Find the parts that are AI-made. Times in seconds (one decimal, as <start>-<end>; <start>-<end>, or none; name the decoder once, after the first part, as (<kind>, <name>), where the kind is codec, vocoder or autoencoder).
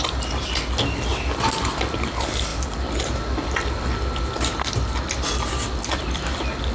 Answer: none